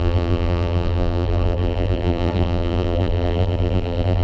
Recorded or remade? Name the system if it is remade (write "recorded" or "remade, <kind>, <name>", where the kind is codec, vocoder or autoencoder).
remade, vocoder, BigVGAN v2